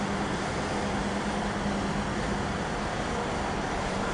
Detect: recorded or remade recorded